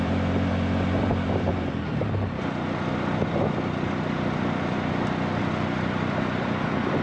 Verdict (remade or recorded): remade